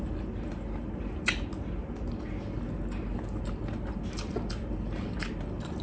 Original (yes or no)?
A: yes